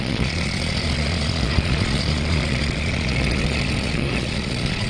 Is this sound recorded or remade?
remade